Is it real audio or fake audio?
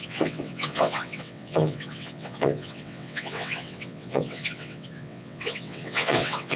fake